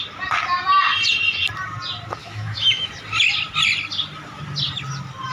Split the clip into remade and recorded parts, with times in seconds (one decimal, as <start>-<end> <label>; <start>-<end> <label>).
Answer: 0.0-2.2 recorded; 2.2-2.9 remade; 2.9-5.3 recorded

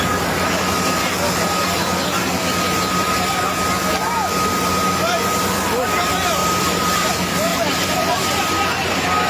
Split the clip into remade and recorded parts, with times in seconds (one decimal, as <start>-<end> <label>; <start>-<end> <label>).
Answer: 0.0-6.4 recorded; 6.4-7.1 remade; 7.1-7.5 recorded; 7.5-8.4 remade; 8.4-9.3 recorded

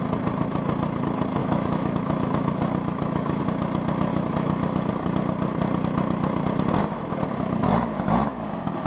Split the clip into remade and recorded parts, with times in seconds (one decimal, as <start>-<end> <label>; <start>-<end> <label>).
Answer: 0.0-1.4 recorded; 1.4-3.4 remade; 3.4-4.1 recorded; 4.1-4.9 remade; 4.9-7.6 recorded; 7.6-8.9 remade

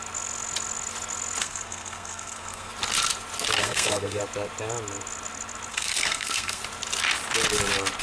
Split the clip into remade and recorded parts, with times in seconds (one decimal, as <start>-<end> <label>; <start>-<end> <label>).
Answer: 0.0-1.4 recorded; 1.4-2.7 remade; 2.7-3.6 recorded; 3.6-4.2 remade; 4.2-5.7 recorded; 5.7-6.6 remade; 6.6-8.0 recorded

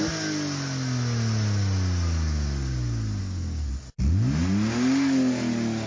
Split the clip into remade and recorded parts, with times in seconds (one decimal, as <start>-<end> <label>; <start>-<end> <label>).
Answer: 0.0-3.2 recorded; 3.2-3.7 remade; 3.7-5.9 recorded